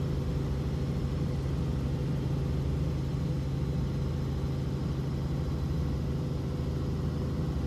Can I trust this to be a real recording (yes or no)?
yes